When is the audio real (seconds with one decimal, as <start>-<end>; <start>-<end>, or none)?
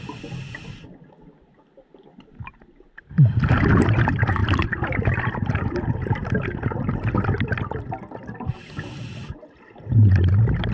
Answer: 0.0-10.7